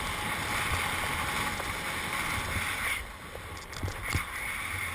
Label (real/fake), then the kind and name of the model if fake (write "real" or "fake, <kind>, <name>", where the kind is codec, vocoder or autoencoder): real